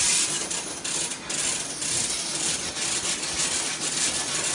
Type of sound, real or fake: real